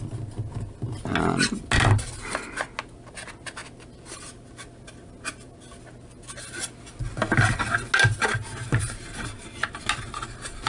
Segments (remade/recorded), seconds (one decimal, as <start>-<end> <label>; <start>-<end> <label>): 0.0-10.7 recorded

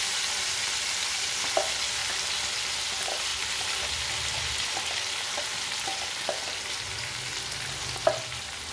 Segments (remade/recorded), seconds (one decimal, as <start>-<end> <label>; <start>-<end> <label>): 0.0-8.7 recorded

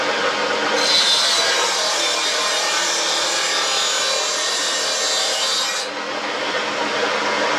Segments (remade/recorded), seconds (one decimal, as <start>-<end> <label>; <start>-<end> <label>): 0.0-7.6 recorded